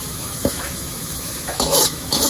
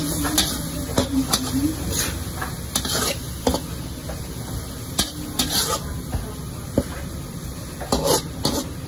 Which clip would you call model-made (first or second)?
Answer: first